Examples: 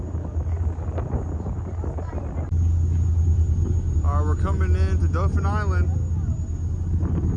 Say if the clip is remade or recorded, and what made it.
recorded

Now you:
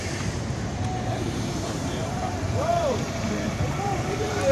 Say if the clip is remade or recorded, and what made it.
remade, vocoder, BigVGAN v2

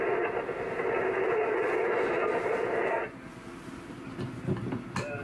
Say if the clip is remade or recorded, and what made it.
recorded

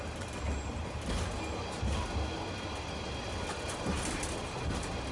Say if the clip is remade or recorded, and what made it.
recorded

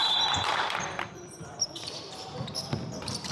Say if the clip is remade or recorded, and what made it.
remade, vocoder, BigVGAN v2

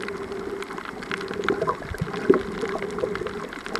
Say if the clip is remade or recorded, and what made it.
recorded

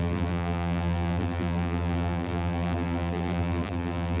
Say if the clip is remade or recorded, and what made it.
remade, vocoder, BigVGAN v2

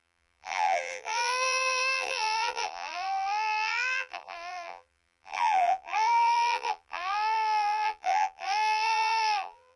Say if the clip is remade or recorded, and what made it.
remade, vocoder, BigVGAN v2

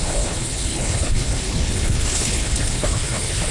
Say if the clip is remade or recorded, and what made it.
remade, codec, HILCodec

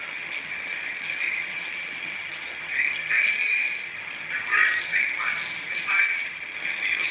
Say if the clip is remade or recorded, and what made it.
remade, vocoder, HiFi-GAN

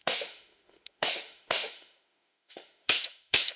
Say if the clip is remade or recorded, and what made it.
remade, autoencoder, DAC-VAE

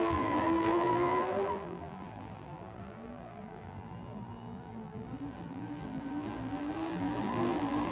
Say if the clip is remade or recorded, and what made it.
remade, vocoder, BigVGAN v2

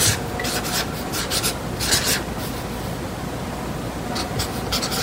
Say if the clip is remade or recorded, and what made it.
recorded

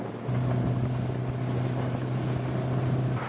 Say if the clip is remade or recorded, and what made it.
recorded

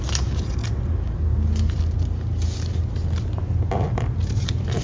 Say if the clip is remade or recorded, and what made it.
recorded